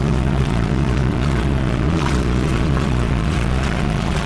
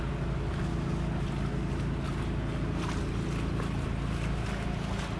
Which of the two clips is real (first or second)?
second